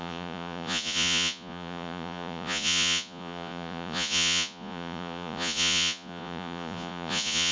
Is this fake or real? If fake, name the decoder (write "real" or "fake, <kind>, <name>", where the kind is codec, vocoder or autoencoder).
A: fake, vocoder, Vocos